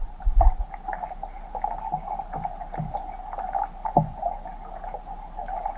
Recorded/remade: recorded